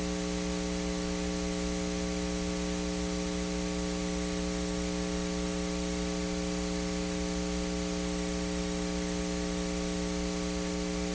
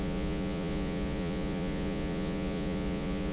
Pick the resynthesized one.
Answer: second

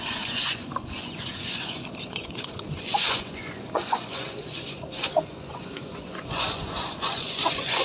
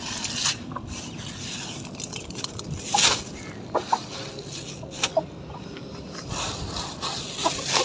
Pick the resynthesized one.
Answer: first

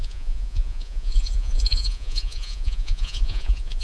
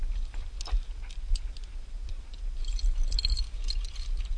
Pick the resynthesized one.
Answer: first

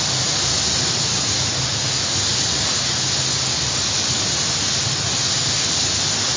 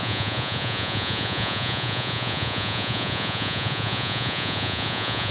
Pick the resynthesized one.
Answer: second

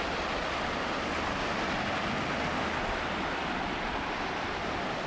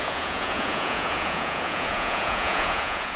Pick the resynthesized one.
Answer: second